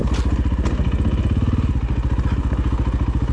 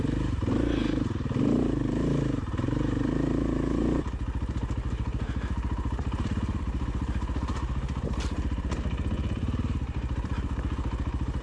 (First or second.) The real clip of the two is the first